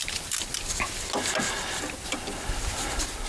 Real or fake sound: real